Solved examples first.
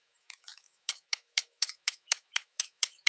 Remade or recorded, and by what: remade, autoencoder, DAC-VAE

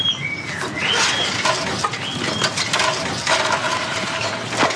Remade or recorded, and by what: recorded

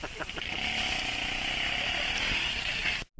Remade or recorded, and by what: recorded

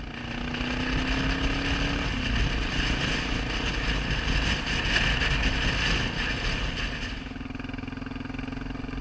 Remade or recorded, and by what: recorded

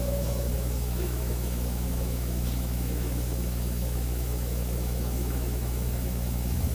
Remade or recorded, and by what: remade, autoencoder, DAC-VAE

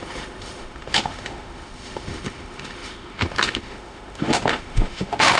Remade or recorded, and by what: remade, autoencoder, DAC-VAE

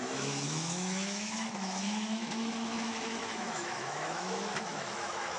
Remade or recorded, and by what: remade, autoencoder, DAC-VAE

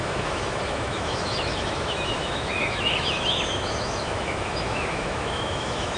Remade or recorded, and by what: remade, autoencoder, DAC-VAE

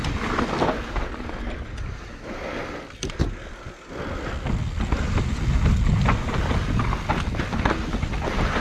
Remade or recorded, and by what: recorded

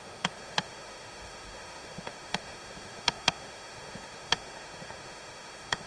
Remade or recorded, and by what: remade, autoencoder, DAC-VAE